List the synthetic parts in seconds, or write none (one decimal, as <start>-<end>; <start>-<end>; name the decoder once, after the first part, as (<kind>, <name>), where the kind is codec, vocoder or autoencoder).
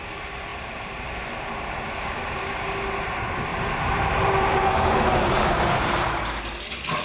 0.5-1.2 (vocoder, BigVGAN v2); 3.5-6.2